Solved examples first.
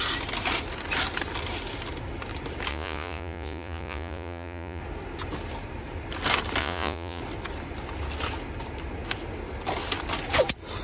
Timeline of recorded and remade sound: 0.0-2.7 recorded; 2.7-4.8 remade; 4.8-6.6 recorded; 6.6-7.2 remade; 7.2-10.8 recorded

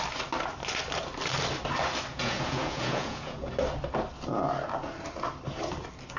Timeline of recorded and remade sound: 0.0-2.1 recorded; 2.1-3.5 remade; 3.5-6.2 recorded

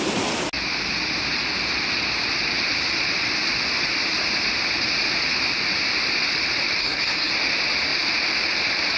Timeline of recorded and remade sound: 0.0-6.8 recorded; 6.8-7.3 remade; 7.3-9.0 recorded

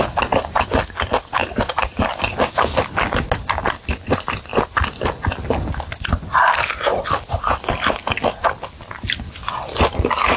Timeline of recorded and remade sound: 0.0-1.4 recorded; 1.4-2.2 remade; 2.2-10.4 recorded

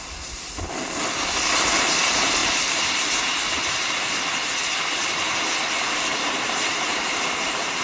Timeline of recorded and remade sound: 0.0-2.4 recorded; 2.4-4.1 remade; 4.1-6.1 recorded; 6.1-7.8 remade

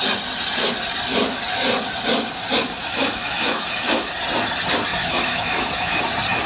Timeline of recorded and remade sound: 0.0-2.8 recorded; 2.8-4.1 remade; 4.1-4.9 recorded; 4.9-6.0 remade; 6.0-6.5 recorded

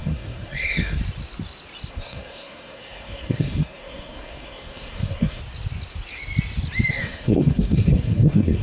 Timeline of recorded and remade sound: 0.0-1.0 remade; 1.0-1.9 recorded; 1.9-5.4 remade; 5.4-6.9 recorded; 6.9-8.6 remade

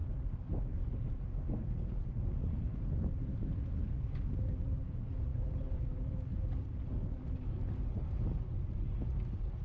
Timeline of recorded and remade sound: 0.0-6.9 recorded; 6.9-7.6 remade; 7.6-9.6 recorded